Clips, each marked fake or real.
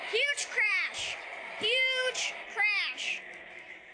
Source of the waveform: fake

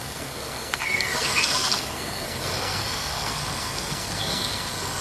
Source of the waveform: fake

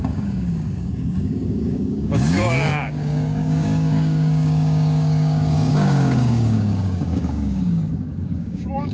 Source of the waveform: fake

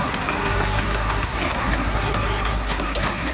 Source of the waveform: fake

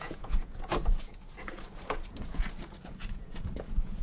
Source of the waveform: fake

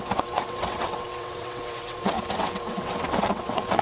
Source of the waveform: fake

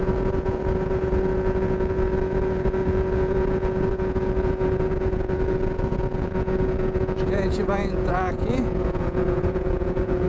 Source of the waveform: fake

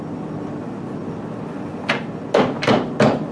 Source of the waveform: real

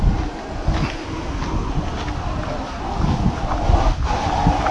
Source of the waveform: real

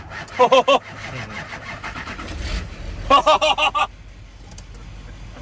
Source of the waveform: real